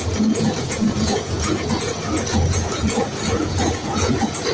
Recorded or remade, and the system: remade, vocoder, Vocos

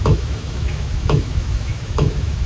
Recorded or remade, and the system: remade, autoencoder, DAC-VAE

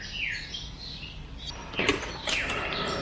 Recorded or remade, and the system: recorded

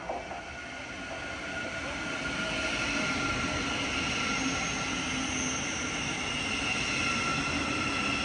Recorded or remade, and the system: recorded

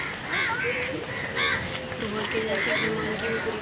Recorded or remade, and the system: recorded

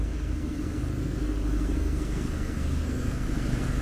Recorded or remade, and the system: remade, codec, SNAC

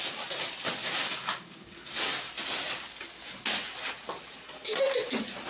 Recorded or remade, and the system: recorded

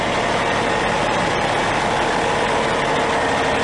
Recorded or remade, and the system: recorded